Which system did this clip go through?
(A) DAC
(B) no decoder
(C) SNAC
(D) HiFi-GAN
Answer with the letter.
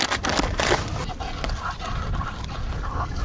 B